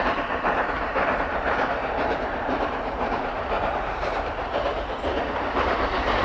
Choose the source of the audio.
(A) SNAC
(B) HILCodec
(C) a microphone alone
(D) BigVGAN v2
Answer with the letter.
D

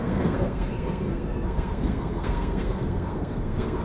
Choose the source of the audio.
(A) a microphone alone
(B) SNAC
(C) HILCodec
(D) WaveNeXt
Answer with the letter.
B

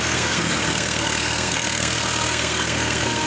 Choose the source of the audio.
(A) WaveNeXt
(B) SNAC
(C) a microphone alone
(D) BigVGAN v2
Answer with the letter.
B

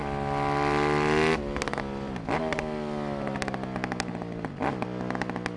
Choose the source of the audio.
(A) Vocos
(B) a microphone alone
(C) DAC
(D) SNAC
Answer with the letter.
B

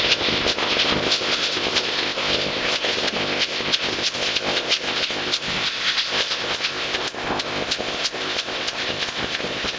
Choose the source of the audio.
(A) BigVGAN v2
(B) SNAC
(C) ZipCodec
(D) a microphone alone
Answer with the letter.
C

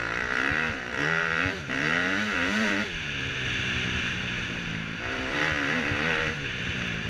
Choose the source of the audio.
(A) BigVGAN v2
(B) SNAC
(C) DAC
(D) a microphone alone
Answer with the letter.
A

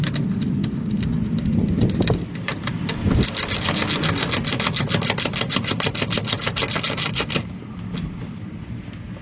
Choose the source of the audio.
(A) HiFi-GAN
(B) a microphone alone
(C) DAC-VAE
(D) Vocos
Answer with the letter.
B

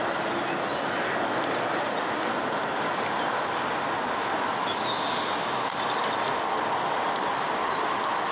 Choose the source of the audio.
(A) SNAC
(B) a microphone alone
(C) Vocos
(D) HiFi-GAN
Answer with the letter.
B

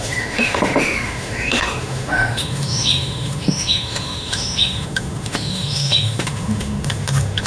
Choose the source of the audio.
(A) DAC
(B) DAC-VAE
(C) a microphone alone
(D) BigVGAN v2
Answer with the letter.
B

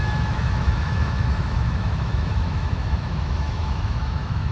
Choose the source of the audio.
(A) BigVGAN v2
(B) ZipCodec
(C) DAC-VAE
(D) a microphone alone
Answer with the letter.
C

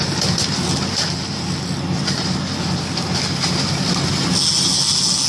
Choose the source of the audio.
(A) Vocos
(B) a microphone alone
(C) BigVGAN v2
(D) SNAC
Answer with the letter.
B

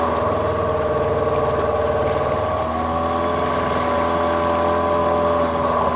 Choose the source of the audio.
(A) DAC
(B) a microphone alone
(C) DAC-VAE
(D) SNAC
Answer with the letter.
B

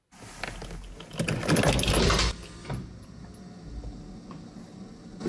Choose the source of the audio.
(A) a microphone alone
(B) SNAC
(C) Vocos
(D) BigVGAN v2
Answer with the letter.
A